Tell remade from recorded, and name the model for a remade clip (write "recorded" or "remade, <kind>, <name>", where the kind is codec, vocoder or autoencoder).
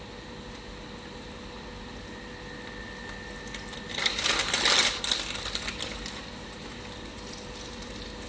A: recorded